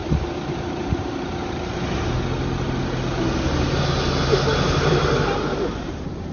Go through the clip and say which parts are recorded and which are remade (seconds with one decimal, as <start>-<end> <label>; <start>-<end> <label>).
0.0-1.3 remade; 1.3-6.3 recorded